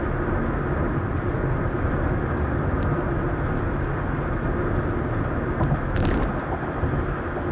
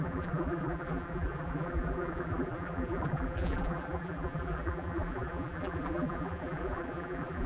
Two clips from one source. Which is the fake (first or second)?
second